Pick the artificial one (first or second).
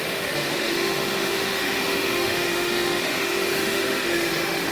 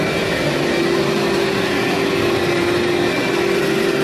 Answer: first